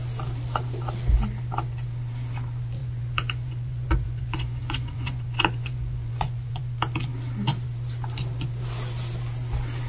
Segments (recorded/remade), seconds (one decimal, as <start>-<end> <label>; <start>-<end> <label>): 0.0-2.8 recorded; 2.8-6.6 remade; 6.6-9.9 recorded